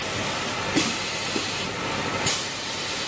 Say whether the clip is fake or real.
real